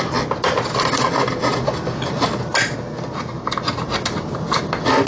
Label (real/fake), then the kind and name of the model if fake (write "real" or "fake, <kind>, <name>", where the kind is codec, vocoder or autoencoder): real